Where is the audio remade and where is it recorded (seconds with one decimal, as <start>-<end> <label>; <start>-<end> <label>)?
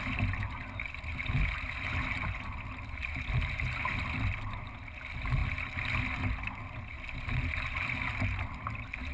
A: 0.0-9.1 recorded